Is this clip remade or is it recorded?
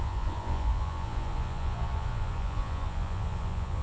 remade